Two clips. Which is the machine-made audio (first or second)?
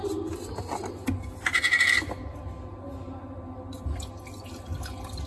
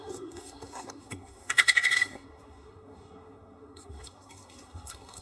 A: second